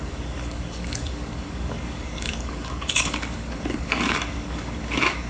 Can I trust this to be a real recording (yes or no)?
no